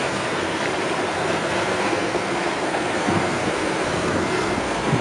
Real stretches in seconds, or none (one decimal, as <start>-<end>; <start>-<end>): 0.6-1.1